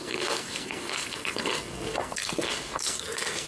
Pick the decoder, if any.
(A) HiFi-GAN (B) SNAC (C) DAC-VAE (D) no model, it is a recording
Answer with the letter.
B